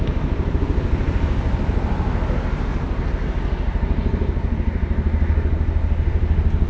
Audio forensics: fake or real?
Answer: real